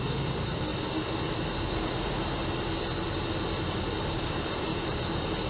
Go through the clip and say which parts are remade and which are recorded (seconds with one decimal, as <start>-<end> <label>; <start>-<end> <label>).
0.0-0.7 remade; 0.7-4.0 recorded; 4.0-4.7 remade; 4.7-5.5 recorded